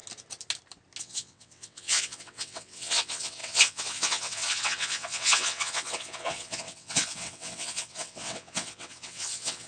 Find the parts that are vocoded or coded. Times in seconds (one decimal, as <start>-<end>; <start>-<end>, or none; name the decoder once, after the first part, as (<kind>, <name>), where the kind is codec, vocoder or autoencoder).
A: 1.0-9.7 (vocoder, WaveNeXt)